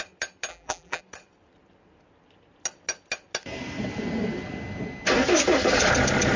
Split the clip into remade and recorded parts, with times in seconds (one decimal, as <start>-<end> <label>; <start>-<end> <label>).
0.0-0.5 recorded; 0.5-1.0 remade; 1.0-6.4 recorded